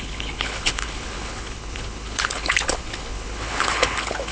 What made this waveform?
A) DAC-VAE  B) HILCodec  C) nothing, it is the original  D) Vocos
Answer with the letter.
B